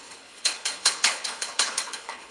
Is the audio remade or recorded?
remade